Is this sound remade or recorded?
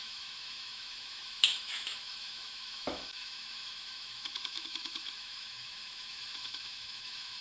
remade